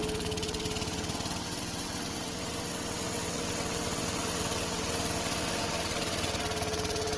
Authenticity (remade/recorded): remade